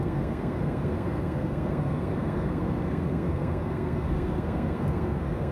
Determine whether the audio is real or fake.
fake